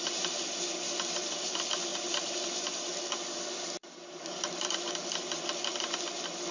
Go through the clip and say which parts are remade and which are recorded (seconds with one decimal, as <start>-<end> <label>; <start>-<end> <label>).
0.0-1.9 recorded; 1.9-4.9 remade; 4.9-5.7 recorded; 5.7-6.5 remade

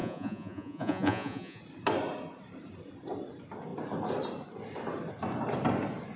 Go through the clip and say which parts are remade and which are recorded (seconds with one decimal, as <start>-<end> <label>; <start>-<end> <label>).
0.0-1.6 remade; 1.6-6.2 recorded